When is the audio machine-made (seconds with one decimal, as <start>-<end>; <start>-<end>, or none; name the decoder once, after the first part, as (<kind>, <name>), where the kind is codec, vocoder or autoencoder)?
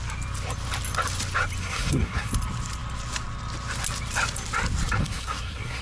1.6-2.3 (codec, SNAC); 5.0-5.8